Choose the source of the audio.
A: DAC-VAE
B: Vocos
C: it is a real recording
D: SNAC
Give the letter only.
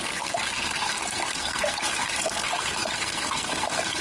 D